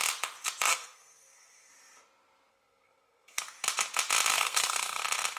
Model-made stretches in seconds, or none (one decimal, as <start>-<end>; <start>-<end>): 0.7-1.7; 2.5-3.4; 4.3-5.0